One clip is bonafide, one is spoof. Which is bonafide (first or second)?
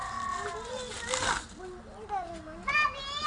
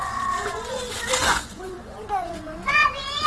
first